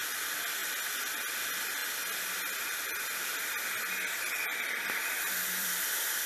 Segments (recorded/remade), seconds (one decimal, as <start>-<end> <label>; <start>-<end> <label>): 0.0-6.3 recorded